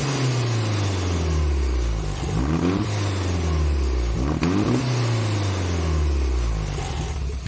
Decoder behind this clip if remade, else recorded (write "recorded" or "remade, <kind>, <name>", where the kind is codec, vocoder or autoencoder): recorded